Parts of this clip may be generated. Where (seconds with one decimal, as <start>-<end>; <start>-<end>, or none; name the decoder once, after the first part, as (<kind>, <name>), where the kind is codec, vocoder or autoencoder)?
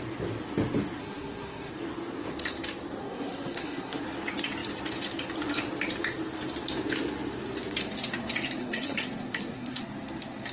1.0-1.7 (codec, SNAC); 3.0-4.0; 8.6-9.8